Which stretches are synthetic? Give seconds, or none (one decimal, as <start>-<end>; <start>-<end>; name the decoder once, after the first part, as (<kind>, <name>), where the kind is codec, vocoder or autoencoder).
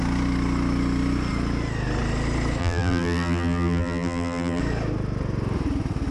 2.6-4.6 (vocoder, BigVGAN v2)